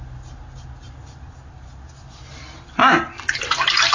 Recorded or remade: recorded